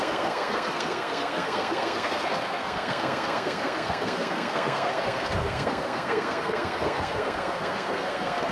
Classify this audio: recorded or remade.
remade